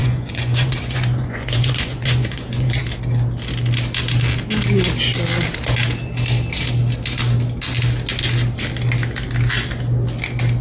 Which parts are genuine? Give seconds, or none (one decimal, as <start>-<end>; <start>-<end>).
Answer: 2.8-10.6